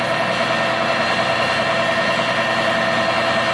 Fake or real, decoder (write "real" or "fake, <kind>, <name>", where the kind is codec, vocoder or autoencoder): real